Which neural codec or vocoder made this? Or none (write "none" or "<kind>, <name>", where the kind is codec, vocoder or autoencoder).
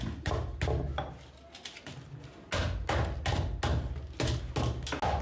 none